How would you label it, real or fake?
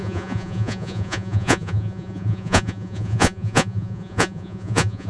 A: fake